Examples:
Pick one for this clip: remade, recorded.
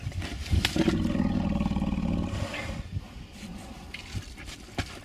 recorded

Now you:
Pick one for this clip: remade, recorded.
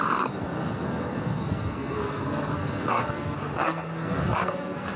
remade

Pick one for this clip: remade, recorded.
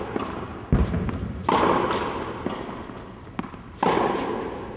recorded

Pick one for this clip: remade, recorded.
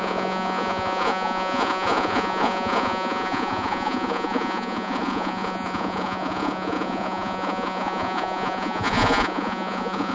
remade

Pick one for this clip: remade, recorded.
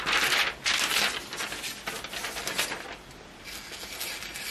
recorded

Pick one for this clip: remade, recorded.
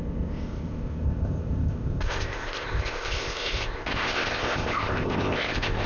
remade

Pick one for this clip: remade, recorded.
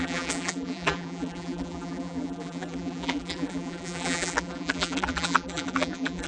remade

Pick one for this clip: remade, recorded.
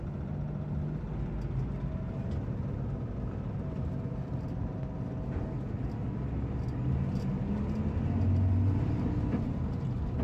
recorded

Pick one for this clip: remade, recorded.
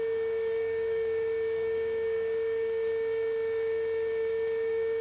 remade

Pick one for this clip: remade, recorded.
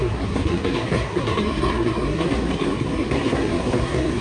remade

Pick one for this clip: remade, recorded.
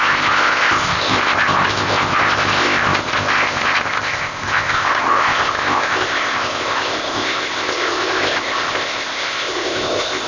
remade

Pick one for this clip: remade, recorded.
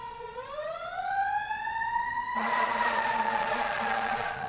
remade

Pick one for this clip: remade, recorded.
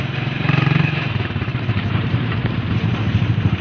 remade